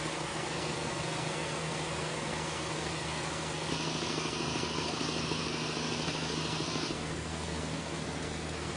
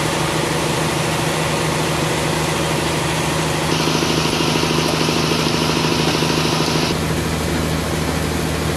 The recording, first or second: second